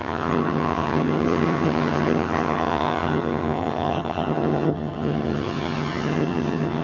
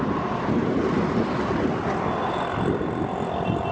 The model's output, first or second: first